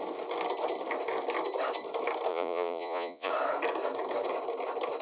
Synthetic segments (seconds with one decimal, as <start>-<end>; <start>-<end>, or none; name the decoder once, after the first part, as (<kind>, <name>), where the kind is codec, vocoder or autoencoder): 2.3-3.3 (vocoder, Vocos)